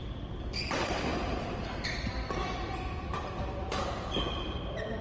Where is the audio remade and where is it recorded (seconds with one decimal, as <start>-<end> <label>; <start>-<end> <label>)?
0.0-5.0 recorded